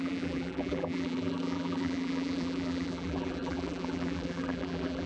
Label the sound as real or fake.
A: fake